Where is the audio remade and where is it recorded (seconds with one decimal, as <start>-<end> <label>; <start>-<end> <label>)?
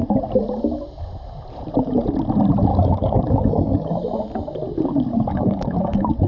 0.0-2.7 recorded; 2.7-4.0 remade; 4.0-5.1 recorded; 5.1-6.3 remade